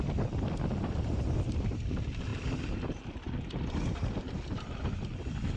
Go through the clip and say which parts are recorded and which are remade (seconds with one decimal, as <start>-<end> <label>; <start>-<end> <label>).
0.0-5.6 recorded